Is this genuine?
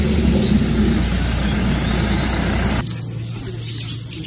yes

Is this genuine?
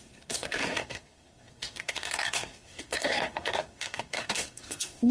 no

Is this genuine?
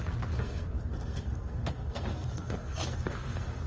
no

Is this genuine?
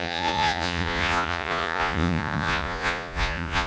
no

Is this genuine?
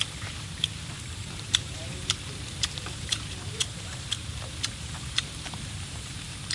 no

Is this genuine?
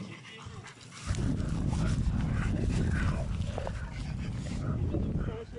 yes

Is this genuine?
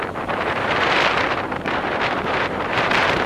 no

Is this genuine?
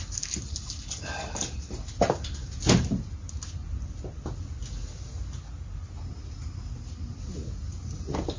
yes